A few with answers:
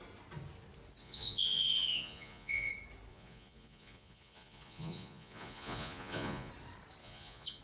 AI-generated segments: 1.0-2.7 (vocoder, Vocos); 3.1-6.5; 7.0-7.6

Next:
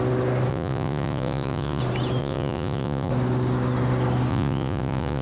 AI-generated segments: 0.5-1.8 (vocoder, Vocos); 2.2-3.1; 4.3-5.2